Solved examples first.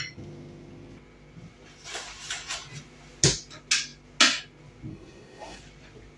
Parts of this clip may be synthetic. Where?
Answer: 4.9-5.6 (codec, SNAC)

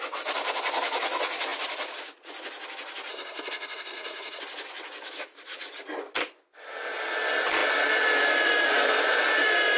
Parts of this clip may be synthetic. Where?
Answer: 3.1-4.4 (codec, SNAC)